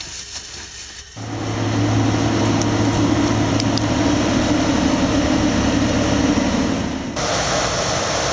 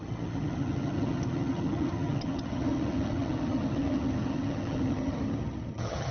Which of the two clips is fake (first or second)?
second